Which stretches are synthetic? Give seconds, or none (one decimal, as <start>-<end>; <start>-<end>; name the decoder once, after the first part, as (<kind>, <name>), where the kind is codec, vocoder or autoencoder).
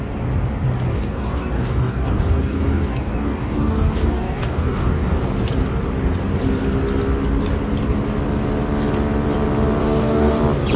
0.9-5.2 (codec, DAC); 9.8-10.4